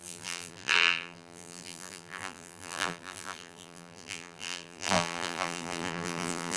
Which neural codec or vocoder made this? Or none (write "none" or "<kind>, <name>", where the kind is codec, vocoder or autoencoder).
vocoder, BigVGAN v2